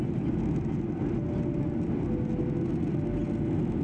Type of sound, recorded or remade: recorded